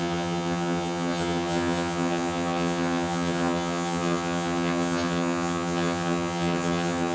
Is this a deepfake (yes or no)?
yes